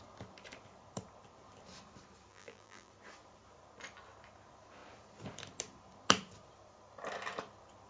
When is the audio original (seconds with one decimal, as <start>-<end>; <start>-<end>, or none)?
0.0-2.3; 2.9-7.9